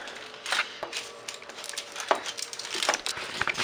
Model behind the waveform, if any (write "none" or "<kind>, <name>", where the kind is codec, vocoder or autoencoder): none